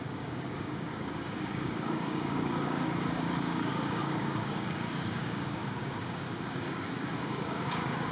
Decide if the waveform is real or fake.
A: fake